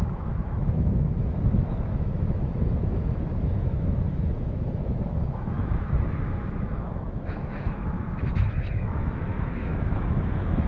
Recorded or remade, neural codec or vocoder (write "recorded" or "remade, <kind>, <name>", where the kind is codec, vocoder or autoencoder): remade, autoencoder, DAC-VAE